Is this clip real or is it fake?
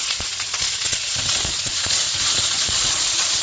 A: fake